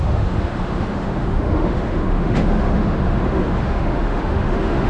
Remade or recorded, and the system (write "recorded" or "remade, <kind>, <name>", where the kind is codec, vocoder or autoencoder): remade, autoencoder, DAC-VAE